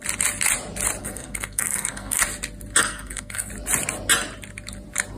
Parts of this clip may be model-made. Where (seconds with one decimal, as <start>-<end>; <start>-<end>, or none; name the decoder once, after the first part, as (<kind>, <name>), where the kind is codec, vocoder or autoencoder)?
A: 1.0-2.2 (codec, SNAC); 2.8-3.5